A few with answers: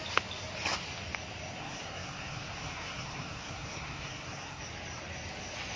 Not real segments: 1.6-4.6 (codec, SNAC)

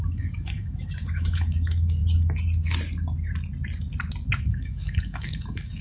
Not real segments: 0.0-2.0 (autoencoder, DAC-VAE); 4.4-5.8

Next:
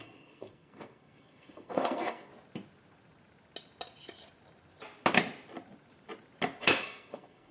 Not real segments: 0.0-2.3 (codec, SNAC); 6.6-7.5

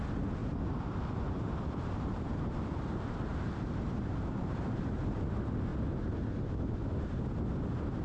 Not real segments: 0.4-5.2 (vocoder, BigVGAN v2); 5.7-6.2

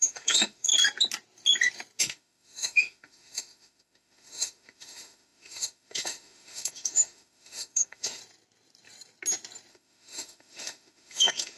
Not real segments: 0.0-0.7 (autoencoder, DAC-VAE); 2.0-8.2; 9.7-11.6